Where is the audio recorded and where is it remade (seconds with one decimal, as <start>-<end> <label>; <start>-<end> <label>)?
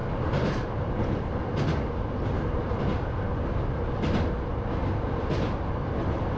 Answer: 0.0-6.4 recorded